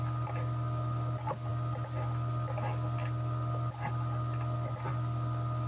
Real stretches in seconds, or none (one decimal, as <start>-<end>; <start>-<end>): 0.0-5.7